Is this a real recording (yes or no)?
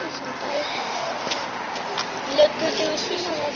yes